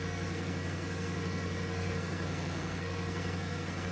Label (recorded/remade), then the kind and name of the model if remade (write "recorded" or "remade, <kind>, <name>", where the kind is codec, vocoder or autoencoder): remade, codec, SNAC